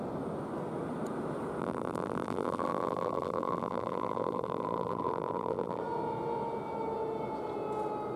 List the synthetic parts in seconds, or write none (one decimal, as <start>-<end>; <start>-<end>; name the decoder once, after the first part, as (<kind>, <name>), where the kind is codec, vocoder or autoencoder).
1.6-5.8 (vocoder, BigVGAN v2)